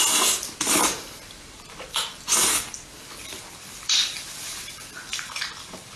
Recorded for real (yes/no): no